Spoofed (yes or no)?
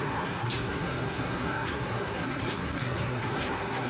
yes